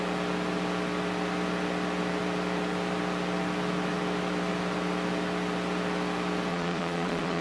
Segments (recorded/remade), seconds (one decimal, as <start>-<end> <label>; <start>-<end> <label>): 0.0-6.5 recorded; 6.5-7.4 remade